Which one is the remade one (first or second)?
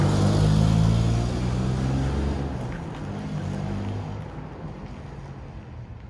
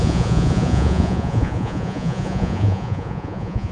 second